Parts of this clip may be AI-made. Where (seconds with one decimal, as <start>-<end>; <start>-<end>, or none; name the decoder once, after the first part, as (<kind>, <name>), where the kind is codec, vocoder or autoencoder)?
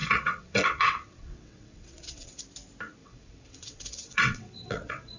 0.0-2.4 (vocoder, WaveNeXt); 3.0-5.2